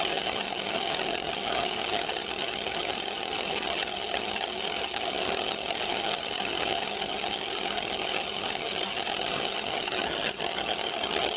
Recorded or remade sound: remade